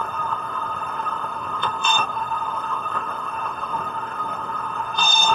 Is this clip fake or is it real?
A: fake